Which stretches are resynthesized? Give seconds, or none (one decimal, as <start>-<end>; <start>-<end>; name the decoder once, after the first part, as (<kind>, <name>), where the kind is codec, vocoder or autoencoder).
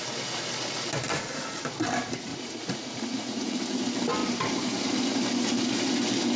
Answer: 2.3-3.6 (vocoder, Vocos)